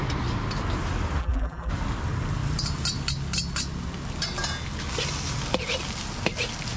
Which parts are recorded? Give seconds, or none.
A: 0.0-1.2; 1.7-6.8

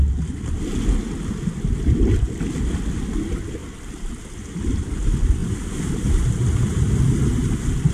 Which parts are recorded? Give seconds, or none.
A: 0.0-3.6; 4.7-5.4; 6.1-7.9

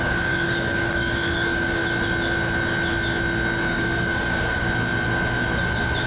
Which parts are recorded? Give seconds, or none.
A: 1.8-3.6; 4.6-6.1

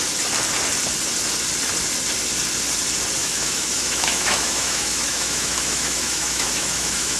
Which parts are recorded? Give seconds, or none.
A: 0.0-3.2

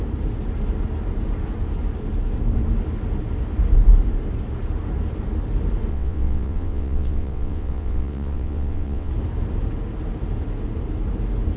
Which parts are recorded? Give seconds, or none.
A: 0.0-5.9; 9.1-11.6